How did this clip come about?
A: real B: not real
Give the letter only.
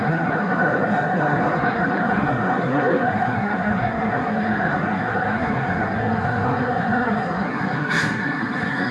B